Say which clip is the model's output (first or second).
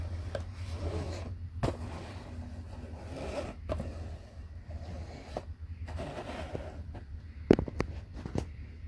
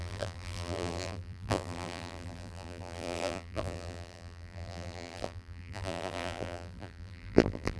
second